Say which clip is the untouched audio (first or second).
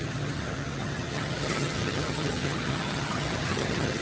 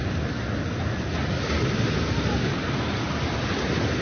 second